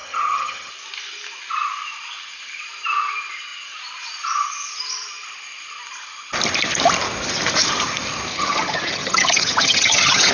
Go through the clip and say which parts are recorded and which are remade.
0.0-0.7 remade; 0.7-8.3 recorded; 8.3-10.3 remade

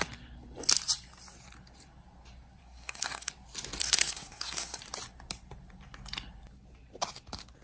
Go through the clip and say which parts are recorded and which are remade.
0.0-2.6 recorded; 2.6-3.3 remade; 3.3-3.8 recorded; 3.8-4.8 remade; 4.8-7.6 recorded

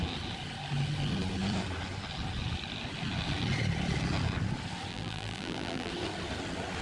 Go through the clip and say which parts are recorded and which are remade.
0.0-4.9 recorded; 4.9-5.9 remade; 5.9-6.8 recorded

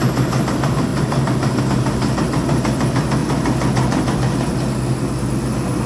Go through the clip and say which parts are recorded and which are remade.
0.0-0.9 recorded; 0.9-1.6 remade; 1.6-5.9 recorded